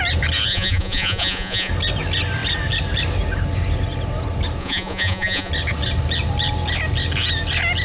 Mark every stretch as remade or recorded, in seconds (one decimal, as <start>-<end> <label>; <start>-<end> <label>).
0.0-0.5 recorded; 0.5-1.7 remade; 1.7-4.6 recorded; 4.6-5.5 remade; 5.5-7.8 recorded